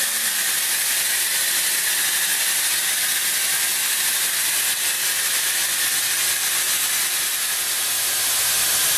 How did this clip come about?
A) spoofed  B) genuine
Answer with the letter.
B